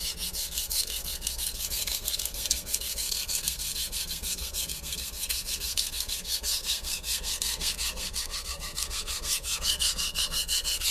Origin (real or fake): fake